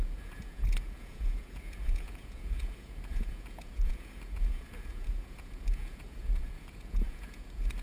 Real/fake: fake